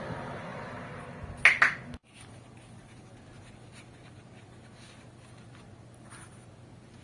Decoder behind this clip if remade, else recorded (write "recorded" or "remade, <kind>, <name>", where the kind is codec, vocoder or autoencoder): recorded